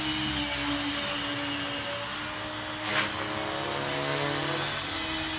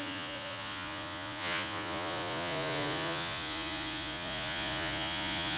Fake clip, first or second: second